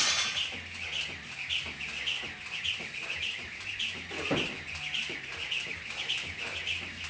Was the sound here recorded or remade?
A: recorded